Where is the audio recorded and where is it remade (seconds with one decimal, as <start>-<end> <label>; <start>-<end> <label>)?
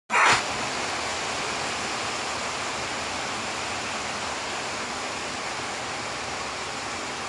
0.0-7.3 recorded